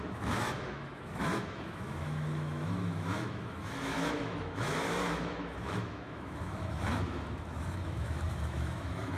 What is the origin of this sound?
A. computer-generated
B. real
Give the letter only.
A